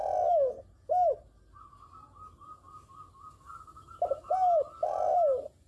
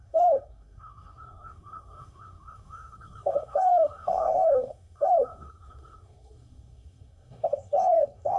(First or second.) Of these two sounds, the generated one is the second